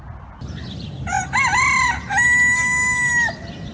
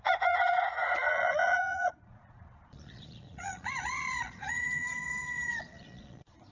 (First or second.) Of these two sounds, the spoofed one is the second